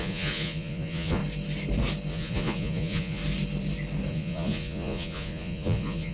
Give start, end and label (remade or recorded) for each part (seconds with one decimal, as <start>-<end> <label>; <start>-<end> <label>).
0.0-1.2 remade; 1.2-2.1 recorded; 2.1-3.2 remade; 3.2-4.1 recorded; 4.1-6.1 remade